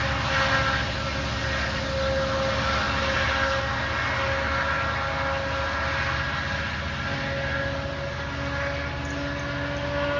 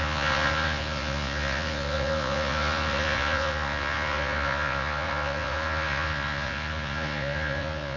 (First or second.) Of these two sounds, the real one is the first